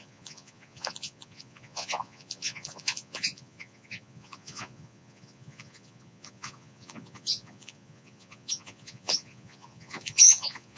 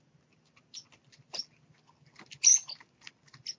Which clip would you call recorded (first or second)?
second